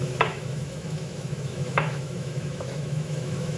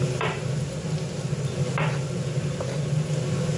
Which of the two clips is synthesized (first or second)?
first